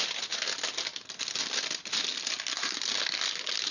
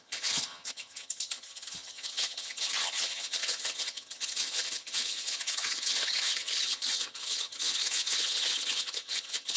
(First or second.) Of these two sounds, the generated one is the second